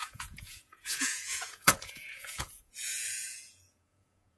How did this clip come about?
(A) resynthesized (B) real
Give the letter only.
A